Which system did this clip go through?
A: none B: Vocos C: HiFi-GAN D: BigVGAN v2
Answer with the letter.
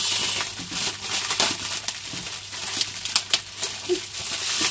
A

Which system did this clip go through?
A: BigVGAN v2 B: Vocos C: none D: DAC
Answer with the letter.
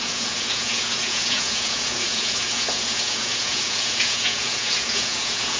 B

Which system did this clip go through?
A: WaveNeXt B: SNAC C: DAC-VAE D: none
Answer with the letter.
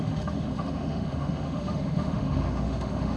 C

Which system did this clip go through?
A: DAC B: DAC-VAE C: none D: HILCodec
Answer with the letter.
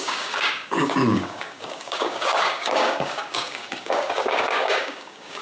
A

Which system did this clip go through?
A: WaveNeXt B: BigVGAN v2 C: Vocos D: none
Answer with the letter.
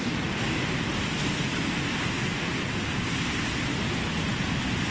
D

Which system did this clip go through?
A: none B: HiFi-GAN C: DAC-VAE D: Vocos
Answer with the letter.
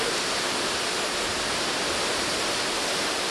A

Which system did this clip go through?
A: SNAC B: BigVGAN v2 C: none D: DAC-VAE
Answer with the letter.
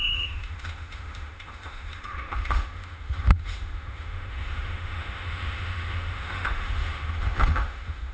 D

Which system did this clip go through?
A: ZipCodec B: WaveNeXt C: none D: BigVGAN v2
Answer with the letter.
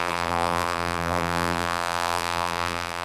D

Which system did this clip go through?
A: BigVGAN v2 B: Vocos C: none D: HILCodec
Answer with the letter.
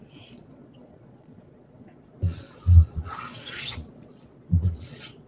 B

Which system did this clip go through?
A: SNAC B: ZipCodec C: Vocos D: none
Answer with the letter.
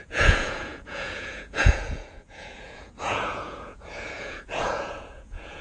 C